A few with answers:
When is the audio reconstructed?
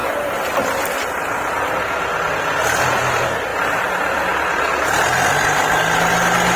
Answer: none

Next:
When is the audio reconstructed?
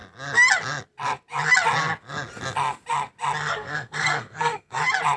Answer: 3.5-4.8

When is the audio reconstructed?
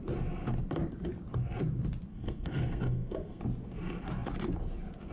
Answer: 2.1-3.4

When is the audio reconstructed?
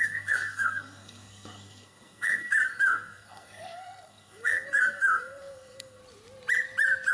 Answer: 0.0-6.0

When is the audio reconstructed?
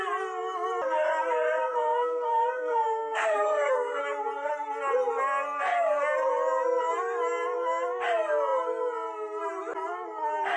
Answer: 1.6-4.0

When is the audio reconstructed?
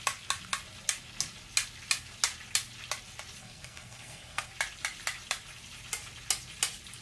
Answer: 3.4-4.5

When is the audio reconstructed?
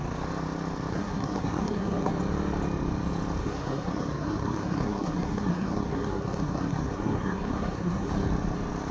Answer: 0.9-2.1; 3.4-8.1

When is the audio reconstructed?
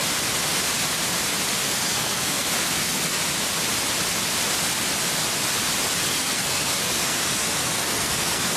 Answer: 1.6-3.2; 6.1-8.6